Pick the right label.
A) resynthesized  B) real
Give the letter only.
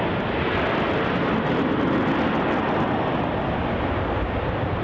B